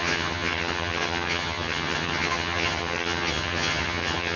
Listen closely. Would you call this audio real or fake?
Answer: fake